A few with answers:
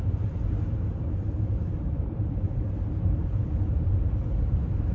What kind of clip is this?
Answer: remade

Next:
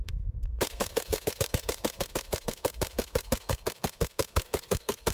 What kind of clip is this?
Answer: remade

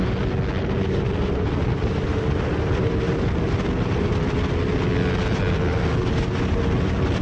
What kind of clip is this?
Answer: recorded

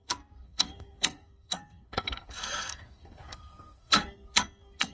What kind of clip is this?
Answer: remade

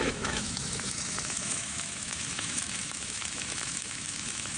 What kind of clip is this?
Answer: remade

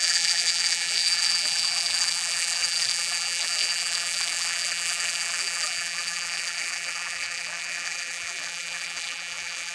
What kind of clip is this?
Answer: remade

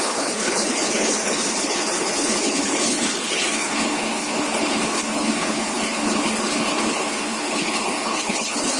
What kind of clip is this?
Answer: remade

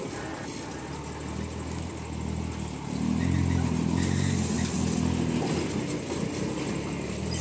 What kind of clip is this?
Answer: recorded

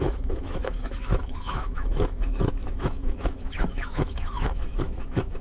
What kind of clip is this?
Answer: remade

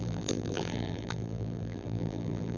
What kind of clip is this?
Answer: remade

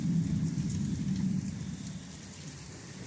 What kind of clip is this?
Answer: remade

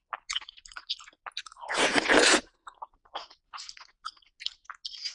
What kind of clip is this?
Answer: recorded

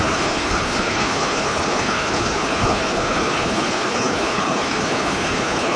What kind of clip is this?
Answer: remade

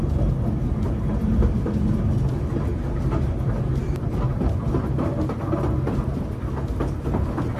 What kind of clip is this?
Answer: recorded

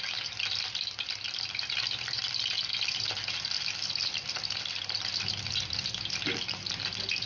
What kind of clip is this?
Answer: recorded